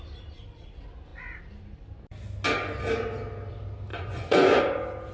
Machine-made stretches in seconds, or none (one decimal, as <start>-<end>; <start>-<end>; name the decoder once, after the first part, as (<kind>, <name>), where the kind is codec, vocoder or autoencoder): 3.9-4.6 (vocoder, Vocos)